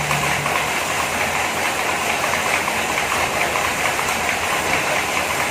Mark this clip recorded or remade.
remade